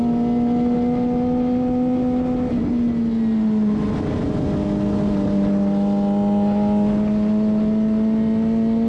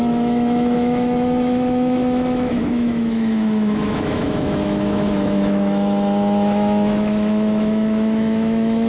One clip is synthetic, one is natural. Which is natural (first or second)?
first